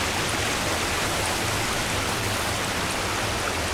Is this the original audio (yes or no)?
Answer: yes